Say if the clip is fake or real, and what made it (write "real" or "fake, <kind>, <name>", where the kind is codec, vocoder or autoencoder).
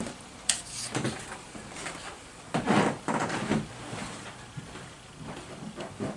fake, vocoder, BigVGAN v2